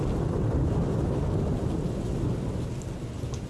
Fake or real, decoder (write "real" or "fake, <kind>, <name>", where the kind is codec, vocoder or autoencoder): real